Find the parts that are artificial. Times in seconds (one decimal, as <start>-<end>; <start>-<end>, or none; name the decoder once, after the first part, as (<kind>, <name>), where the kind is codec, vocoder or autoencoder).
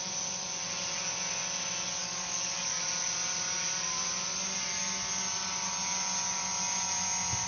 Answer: 2.0-2.8 (codec, DAC)